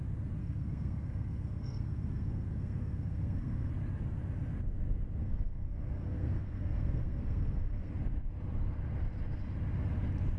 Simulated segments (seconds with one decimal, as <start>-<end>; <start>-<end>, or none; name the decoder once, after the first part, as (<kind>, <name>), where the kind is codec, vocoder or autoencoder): 0.4-3.7 (codec, SNAC); 5.2-7.9